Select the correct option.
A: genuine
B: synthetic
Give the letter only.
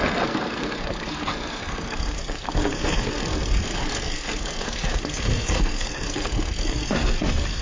B